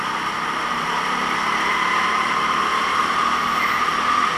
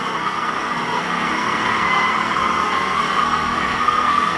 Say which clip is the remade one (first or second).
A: second